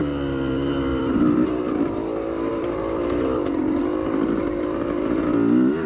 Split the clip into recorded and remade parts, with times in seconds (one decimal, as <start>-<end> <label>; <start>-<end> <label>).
0.0-0.9 recorded; 0.9-1.6 remade; 1.6-2.5 recorded; 2.5-3.8 remade; 3.8-5.9 recorded